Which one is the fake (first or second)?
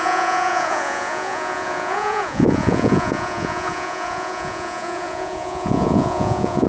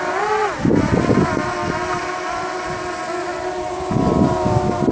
first